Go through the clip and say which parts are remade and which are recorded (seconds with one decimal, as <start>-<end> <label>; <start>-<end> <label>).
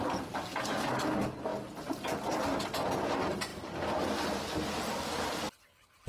0.0-6.1 recorded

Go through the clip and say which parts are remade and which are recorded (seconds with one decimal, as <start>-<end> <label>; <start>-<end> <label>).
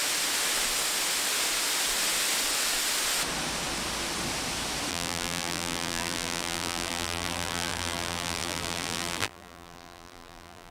0.0-4.9 recorded; 4.9-10.7 remade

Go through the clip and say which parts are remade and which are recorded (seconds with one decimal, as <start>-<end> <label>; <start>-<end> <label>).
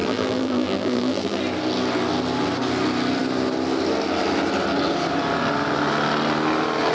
0.0-1.4 remade; 1.4-6.9 recorded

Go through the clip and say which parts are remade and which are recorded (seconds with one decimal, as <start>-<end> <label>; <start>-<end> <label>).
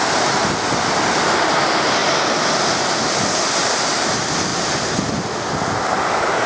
0.0-6.5 recorded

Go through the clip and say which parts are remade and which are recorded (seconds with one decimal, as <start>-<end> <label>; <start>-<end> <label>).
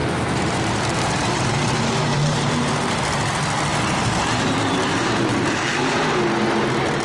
0.0-2.5 remade; 2.5-3.7 recorded; 3.7-6.2 remade; 6.2-7.0 recorded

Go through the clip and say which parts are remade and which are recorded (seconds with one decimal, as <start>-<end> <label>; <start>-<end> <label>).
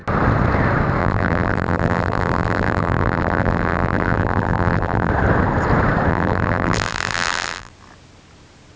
0.0-1.0 recorded; 1.0-5.1 remade; 5.1-6.1 recorded; 6.1-7.7 remade; 7.7-8.8 recorded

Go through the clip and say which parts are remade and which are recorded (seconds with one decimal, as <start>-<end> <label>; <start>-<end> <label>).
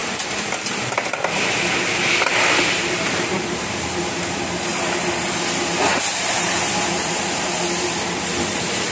0.0-4.0 remade; 4.0-5.9 recorded; 5.9-7.6 remade; 7.6-8.9 recorded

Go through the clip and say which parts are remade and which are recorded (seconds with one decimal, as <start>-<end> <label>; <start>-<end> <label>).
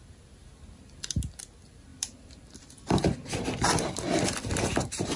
0.0-1.9 recorded; 1.9-5.2 remade